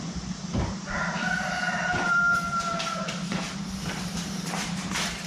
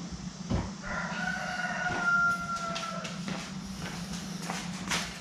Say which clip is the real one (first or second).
second